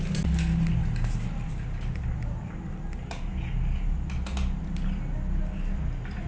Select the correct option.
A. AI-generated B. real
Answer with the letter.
B